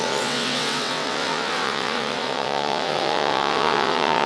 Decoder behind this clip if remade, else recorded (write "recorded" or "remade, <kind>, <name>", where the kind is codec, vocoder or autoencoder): remade, vocoder, WaveNeXt